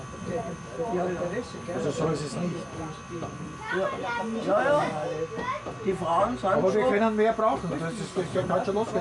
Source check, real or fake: real